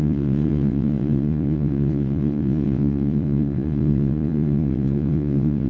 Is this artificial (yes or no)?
yes